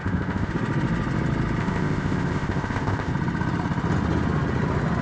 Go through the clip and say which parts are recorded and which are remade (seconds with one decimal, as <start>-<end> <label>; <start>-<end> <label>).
0.0-0.5 remade; 0.5-1.6 recorded; 1.6-3.1 remade; 3.1-5.0 recorded